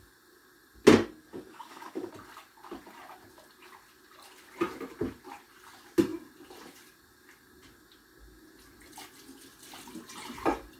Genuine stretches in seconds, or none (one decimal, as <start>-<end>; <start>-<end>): 0.0-1.2; 2.1-10.8